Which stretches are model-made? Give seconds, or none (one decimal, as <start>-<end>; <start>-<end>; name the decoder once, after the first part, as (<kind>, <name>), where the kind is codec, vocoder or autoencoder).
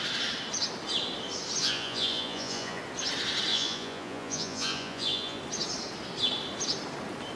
1.6-2.8 (vocoder, Vocos); 3.5-5.4